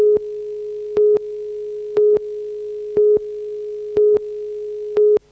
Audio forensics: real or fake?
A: real